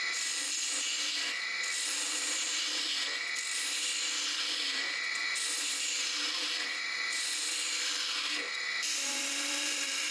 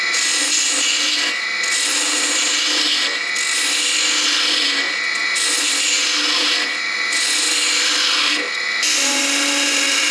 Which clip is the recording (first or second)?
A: second